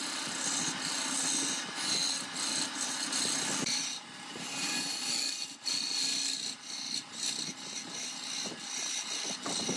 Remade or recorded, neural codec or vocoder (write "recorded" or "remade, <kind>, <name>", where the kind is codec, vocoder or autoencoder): recorded